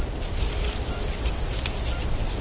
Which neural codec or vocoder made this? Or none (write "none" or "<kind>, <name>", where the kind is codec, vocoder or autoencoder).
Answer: none